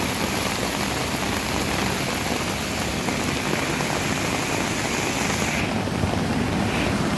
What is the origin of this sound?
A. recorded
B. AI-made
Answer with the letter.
A